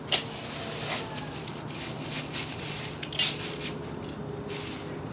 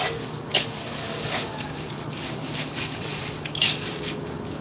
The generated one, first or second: second